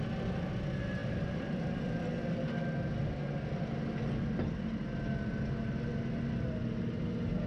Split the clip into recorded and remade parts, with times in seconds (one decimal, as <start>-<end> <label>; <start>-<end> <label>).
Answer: 0.0-7.5 recorded